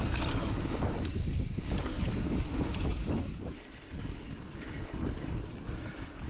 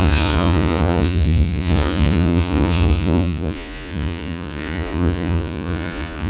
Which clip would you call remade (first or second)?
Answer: second